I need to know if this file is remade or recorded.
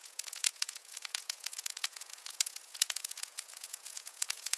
remade